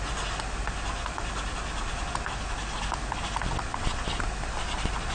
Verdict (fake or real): real